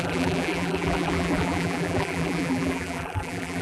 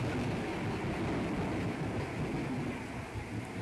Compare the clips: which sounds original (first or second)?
second